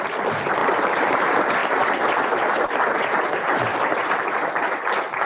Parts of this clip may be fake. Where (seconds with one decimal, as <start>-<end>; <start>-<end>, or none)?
none